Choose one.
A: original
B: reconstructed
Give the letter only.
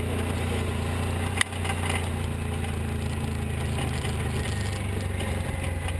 A